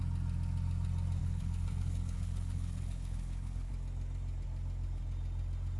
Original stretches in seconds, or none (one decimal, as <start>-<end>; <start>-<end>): 0.0-1.2; 3.7-5.8